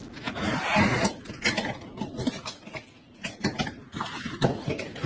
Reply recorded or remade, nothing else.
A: recorded